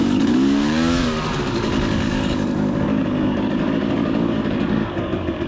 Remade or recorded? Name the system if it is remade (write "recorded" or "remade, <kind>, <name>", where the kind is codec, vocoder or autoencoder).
remade, codec, DAC